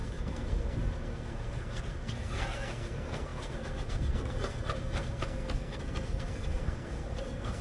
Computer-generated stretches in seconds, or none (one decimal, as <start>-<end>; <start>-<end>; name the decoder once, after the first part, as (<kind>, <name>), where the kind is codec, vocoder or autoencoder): 0.0-7.6 (codec, SNAC)